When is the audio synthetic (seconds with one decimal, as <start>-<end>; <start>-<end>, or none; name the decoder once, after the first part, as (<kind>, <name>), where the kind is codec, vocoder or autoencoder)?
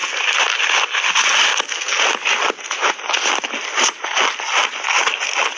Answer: none